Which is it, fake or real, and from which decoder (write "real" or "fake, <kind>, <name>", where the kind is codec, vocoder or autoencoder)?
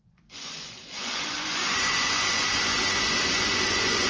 fake, vocoder, Vocos